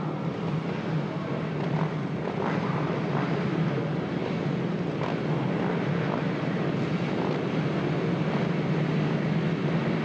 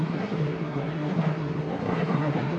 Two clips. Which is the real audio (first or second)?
first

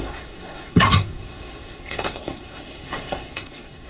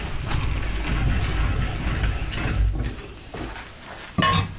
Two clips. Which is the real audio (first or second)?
second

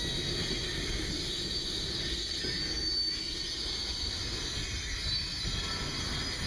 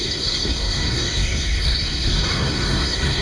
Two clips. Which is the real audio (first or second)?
first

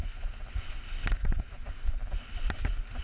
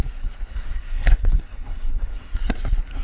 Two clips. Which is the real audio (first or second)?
first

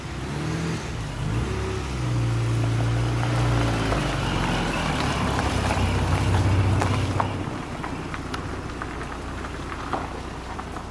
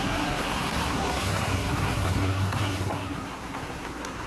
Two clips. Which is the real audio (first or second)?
first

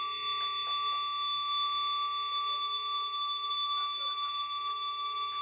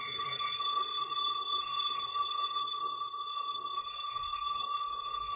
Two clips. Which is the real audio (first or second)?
first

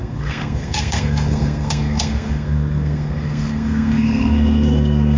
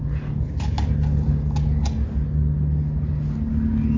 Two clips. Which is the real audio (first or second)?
second